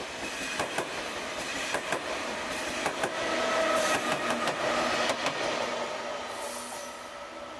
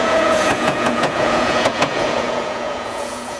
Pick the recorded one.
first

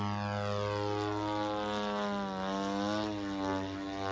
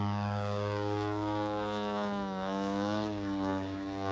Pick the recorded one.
first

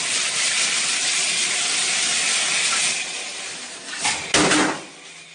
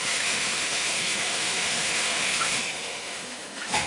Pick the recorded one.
first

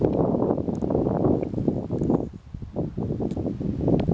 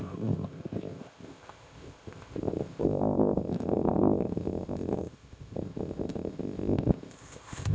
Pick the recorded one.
first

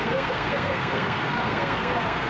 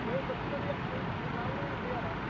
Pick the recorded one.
second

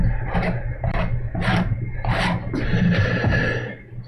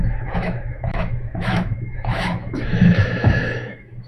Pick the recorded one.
first